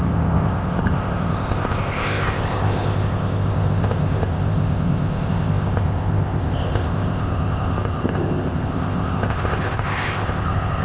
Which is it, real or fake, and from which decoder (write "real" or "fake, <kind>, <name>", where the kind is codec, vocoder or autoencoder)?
fake, codec, ZipCodec